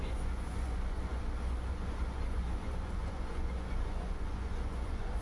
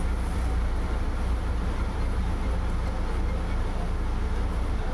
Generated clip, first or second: first